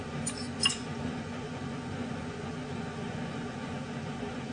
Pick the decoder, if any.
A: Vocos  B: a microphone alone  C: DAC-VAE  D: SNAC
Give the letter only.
A